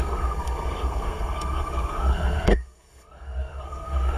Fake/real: fake